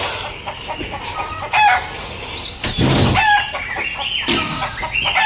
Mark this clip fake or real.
real